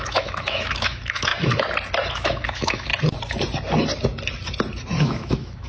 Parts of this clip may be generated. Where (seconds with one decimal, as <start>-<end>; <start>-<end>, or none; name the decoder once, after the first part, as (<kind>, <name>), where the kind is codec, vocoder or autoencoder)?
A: 0.0-1.3 (autoencoder, DAC-VAE); 2.1-2.9; 5.0-5.7